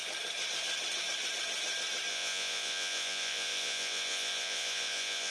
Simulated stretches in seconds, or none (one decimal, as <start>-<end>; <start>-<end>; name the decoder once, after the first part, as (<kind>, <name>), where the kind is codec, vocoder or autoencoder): 2.1-5.3 (vocoder, Vocos)

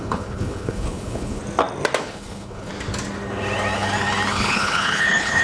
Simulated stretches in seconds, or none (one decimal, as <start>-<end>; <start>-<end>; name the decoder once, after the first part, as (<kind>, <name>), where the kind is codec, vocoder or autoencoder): 0.0-1.4 (codec, HILCodec); 2.0-2.7; 4.3-5.4

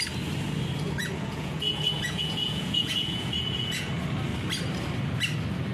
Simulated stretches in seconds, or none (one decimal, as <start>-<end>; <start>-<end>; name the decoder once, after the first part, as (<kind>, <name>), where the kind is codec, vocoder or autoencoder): 1.0-3.9 (vocoder, Vocos)

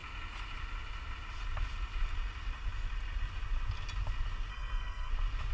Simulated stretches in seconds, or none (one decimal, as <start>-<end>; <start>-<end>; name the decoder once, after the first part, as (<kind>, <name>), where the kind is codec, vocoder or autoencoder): 4.5-5.1 (codec, SNAC)

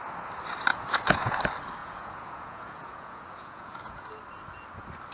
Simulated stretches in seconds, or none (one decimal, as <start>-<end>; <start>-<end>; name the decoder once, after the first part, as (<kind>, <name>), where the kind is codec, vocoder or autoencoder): 0.7-1.4 (vocoder, Vocos); 1.8-4.1

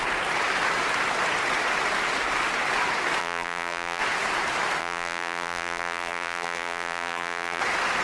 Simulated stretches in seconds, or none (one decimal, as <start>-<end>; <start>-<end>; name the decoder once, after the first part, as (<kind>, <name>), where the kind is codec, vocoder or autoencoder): 3.2-4.0 (vocoder, BigVGAN v2); 4.8-7.6